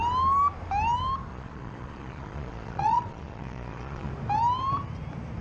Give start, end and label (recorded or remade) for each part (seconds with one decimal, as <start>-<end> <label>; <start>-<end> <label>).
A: 0.0-1.3 recorded; 1.3-4.1 remade; 4.1-5.4 recorded